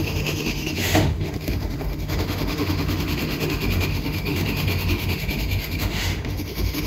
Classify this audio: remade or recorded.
remade